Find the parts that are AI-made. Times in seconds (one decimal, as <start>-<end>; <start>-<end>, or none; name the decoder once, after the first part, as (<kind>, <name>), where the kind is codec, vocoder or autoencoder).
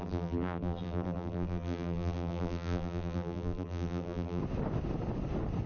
0.0-4.4 (vocoder, BigVGAN v2)